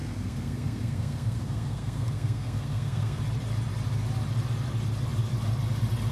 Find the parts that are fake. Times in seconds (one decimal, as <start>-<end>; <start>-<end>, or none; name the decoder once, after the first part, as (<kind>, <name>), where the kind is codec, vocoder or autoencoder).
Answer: 0.0-3.2 (codec, SNAC)